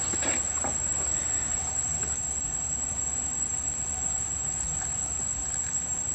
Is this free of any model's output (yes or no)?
no